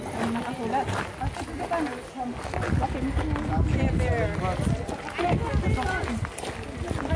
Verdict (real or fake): real